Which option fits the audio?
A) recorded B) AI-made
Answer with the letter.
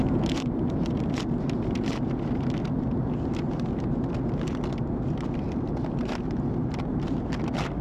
A